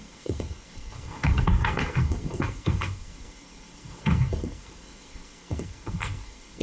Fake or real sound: fake